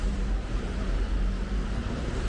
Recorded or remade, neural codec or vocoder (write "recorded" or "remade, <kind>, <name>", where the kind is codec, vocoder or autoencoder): remade, vocoder, BigVGAN v2